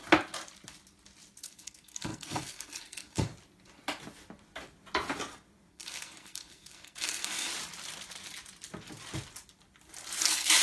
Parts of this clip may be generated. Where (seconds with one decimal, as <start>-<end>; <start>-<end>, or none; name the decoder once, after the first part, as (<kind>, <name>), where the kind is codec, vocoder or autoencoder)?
1.4-3.3 (codec, SNAC); 5.7-7.5; 10.2-10.6

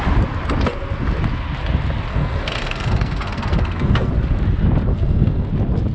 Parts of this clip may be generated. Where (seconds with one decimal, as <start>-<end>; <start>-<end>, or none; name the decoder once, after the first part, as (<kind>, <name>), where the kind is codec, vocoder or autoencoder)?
2.1-4.1 (codec, SNAC); 4.9-5.5

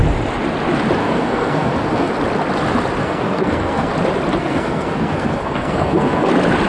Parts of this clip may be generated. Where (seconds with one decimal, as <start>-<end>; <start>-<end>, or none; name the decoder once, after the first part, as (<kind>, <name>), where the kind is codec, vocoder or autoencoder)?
1.0-2.1 (codec, SNAC); 3.0-3.9; 4.4-6.3

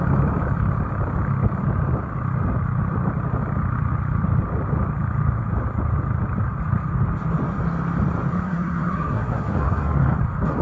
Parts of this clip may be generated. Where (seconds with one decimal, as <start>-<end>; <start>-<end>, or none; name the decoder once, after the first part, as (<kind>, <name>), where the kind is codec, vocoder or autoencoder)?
8.3-10.2 (codec, SNAC)